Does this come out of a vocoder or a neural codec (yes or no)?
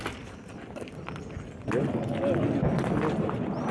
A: no